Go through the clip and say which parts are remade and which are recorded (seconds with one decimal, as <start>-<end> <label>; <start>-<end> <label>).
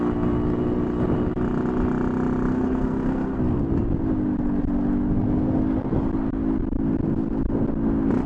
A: 0.0-2.5 recorded; 2.5-3.4 remade; 3.4-8.3 recorded